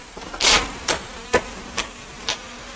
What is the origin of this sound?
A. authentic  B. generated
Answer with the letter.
A